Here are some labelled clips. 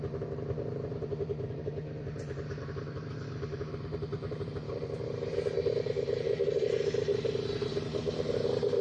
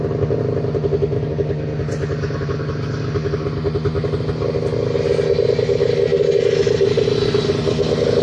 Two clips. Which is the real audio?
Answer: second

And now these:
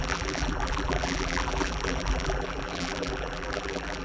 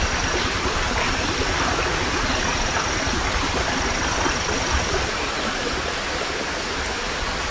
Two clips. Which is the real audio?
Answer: second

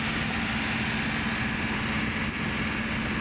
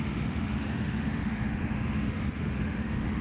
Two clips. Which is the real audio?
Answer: first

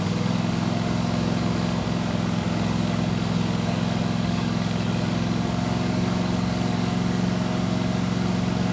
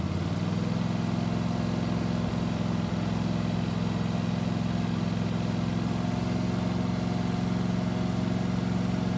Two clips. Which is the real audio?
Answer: second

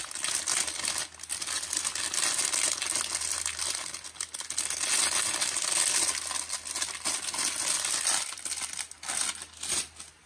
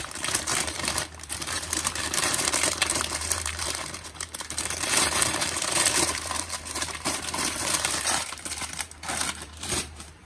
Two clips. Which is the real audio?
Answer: first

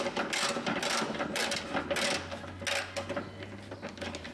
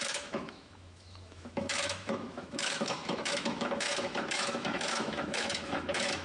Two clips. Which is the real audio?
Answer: first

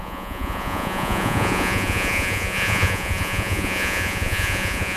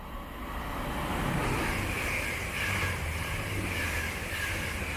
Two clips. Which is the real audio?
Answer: second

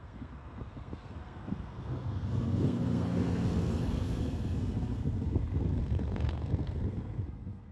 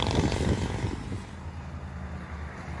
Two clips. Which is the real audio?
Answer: second